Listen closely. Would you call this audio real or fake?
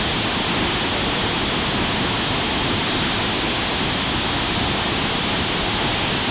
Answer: real